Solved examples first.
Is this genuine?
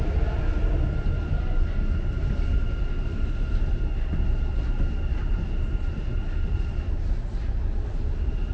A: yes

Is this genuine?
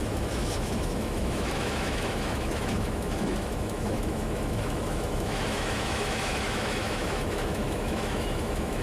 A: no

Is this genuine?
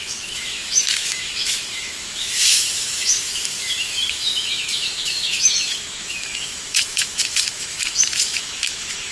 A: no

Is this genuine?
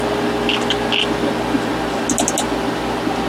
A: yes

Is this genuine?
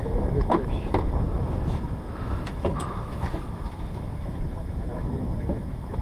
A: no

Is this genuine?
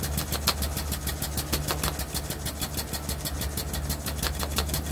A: yes